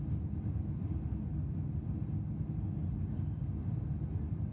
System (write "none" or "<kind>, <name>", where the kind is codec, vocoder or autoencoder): none